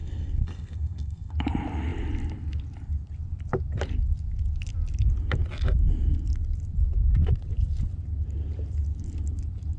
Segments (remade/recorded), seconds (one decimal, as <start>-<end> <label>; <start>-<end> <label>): 0.0-1.3 remade; 1.3-9.8 recorded